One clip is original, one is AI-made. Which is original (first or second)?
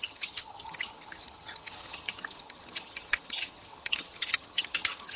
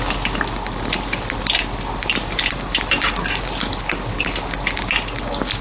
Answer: second